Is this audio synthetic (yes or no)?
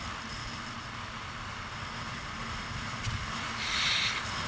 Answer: no